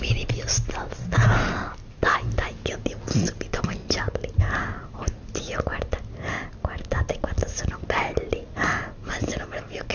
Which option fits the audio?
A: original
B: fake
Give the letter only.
A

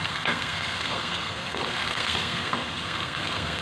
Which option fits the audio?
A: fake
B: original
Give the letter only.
A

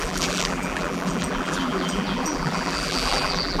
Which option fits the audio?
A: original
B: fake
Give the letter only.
B